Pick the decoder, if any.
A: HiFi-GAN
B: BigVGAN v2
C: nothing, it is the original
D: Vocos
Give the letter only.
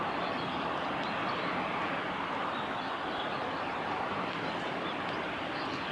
C